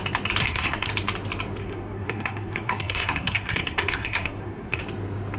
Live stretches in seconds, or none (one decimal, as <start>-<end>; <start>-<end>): 0.0-0.4; 0.9-1.6; 4.8-5.4